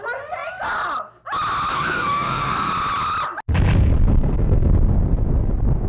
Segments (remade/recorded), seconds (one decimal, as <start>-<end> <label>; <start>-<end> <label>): 0.0-1.7 recorded; 1.7-2.7 remade; 2.7-4.2 recorded; 4.2-4.7 remade; 4.7-5.9 recorded

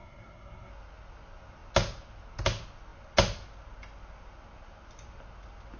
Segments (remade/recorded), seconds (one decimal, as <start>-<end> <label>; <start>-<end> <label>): 0.0-0.7 remade; 0.7-5.8 recorded